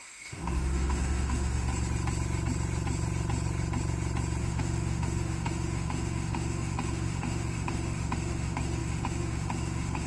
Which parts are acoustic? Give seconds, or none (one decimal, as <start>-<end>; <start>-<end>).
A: 1.7-4.4